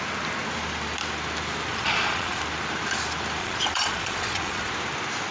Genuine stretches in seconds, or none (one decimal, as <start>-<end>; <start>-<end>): 0.0-1.7; 2.4-3.4; 4.7-5.3